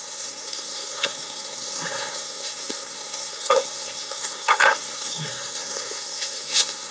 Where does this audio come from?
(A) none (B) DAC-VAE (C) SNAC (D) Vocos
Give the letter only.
C